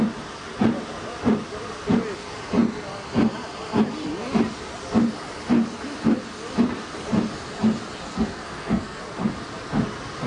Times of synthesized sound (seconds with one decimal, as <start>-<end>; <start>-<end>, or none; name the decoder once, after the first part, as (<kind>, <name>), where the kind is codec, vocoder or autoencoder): 8.1-9.0 (codec, SNAC)